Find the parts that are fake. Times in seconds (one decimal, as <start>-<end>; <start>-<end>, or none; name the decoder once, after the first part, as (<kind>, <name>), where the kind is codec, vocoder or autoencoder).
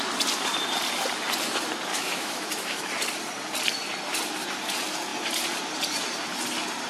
1.9-2.9 (autoencoder, DAC-VAE)